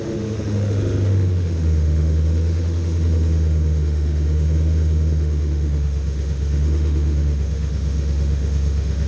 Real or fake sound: fake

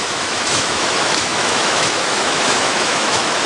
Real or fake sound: fake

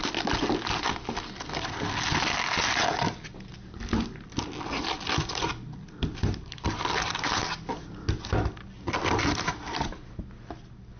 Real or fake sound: real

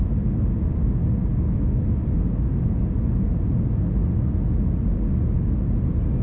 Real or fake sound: real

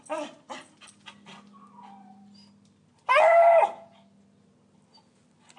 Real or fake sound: real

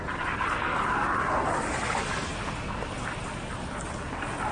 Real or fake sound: real